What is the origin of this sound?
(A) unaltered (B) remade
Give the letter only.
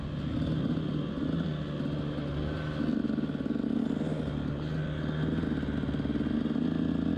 A